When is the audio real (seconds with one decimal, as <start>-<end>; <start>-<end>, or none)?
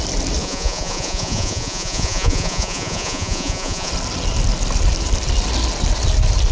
0.0-0.4; 3.9-6.5